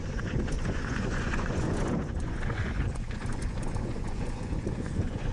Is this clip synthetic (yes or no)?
yes